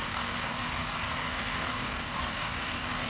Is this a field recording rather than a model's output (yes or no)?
no